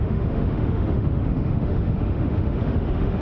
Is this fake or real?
fake